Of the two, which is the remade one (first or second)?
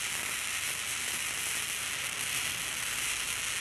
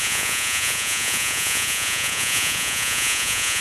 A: second